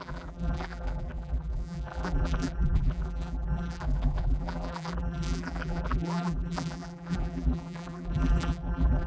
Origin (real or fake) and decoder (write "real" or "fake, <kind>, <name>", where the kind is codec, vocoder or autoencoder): fake, vocoder, BigVGAN v2